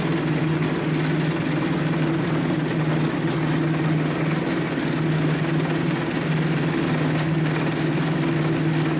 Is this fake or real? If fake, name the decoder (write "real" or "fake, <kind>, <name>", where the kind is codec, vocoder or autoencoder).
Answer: real